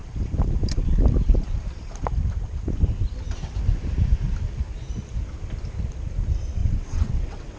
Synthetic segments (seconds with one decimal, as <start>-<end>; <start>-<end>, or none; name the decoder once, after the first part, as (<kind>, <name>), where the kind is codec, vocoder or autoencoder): 6.6-7.6 (vocoder, WaveNeXt)